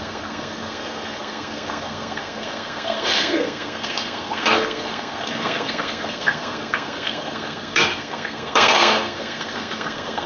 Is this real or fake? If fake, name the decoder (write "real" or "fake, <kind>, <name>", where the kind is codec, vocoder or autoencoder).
fake, codec, SNAC